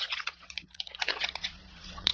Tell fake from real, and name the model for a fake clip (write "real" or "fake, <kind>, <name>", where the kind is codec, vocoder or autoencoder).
fake, vocoder, Vocos